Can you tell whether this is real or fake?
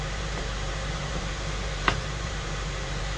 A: fake